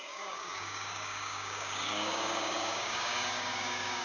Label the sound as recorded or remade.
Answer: remade